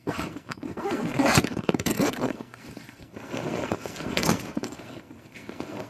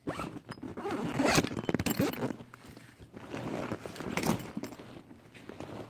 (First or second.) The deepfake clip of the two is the first